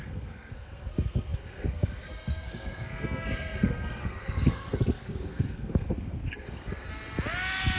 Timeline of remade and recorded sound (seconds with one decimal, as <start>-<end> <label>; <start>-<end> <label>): 0.0-6.9 remade; 6.9-7.8 recorded